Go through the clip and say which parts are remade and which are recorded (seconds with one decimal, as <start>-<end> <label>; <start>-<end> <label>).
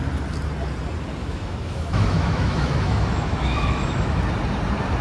0.0-1.2 recorded; 1.2-4.2 remade; 4.2-5.0 recorded